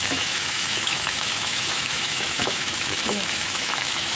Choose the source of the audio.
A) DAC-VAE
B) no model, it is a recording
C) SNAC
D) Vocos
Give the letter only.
A